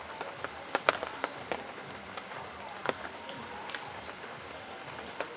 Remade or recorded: recorded